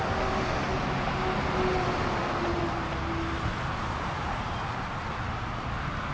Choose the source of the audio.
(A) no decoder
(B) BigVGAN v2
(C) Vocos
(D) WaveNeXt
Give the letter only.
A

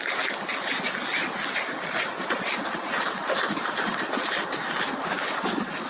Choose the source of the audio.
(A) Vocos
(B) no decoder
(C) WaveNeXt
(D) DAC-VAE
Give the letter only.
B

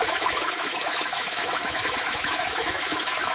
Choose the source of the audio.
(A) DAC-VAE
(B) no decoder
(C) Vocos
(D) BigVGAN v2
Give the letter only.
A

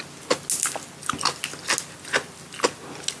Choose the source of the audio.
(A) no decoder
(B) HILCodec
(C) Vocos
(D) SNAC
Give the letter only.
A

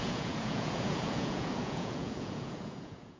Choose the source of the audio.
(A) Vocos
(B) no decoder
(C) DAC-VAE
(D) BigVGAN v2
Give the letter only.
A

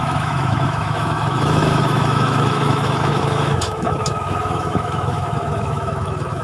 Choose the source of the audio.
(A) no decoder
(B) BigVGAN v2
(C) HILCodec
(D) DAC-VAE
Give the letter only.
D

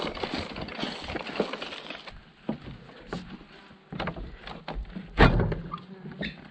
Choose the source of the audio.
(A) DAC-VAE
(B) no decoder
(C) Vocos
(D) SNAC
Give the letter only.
B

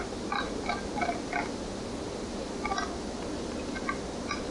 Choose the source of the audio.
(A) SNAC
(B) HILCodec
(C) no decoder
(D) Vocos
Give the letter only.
C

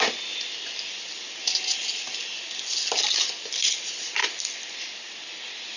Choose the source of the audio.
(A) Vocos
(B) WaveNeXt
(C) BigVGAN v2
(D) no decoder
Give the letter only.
D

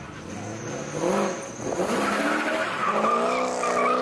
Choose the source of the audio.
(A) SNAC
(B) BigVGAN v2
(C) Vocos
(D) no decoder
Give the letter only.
D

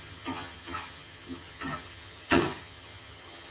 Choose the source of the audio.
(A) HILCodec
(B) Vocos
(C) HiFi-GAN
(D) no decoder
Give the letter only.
C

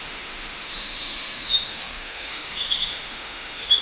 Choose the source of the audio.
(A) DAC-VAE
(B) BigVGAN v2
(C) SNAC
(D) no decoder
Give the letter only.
A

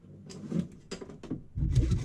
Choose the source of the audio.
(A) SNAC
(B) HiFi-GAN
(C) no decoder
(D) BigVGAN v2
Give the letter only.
C